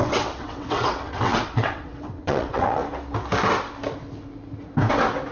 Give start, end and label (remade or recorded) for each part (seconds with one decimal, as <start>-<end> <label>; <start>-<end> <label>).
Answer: 0.0-2.8 remade; 2.8-5.3 recorded